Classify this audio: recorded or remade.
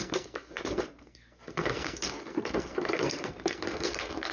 remade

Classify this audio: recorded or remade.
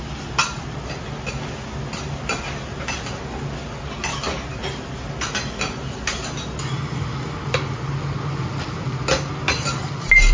recorded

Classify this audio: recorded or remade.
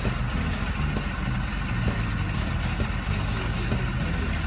recorded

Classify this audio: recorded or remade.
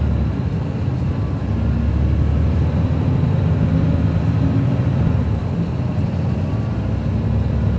recorded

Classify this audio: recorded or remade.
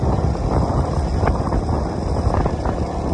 recorded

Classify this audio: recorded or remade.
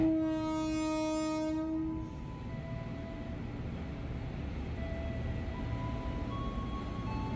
recorded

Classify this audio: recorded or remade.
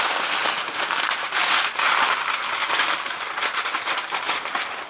recorded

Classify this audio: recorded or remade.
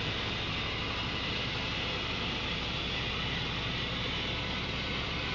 recorded